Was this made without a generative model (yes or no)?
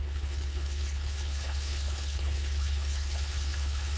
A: no